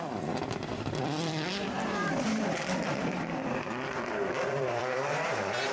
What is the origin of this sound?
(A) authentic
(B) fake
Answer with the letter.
B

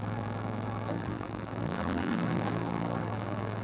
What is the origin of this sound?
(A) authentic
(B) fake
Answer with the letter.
B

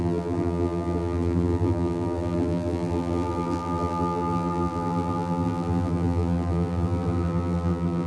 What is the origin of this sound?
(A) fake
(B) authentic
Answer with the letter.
A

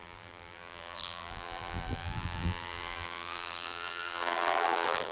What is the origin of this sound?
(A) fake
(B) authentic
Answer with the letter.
A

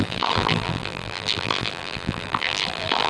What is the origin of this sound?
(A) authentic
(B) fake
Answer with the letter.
B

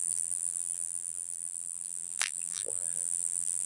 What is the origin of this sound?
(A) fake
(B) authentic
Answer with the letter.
A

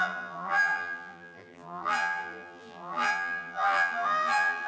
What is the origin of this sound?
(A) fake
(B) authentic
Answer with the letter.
A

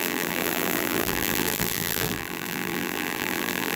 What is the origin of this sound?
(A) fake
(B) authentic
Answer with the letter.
A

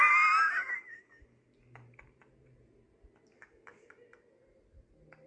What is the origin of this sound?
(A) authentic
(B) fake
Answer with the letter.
A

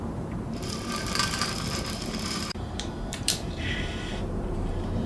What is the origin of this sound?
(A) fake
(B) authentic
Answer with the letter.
A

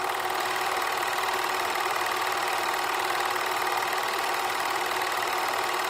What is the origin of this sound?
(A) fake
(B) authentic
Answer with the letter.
A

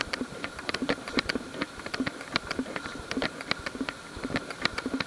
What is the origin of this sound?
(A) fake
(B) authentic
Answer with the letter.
A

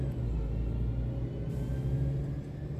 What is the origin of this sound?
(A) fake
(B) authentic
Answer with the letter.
B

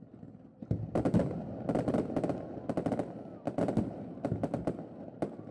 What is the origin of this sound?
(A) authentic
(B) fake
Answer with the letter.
A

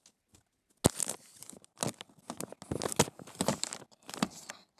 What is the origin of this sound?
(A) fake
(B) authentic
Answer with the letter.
B